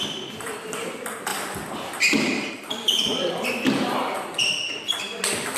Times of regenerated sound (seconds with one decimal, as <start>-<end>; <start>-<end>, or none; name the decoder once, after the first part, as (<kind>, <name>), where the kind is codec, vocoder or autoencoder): 1.3-3.3 (vocoder, BigVGAN v2)